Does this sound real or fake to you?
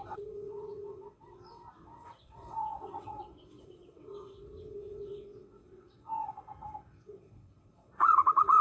fake